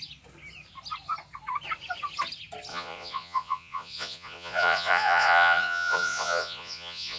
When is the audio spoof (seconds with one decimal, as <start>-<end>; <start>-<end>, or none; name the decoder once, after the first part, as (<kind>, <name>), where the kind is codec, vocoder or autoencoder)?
2.7-7.2 (vocoder, Vocos)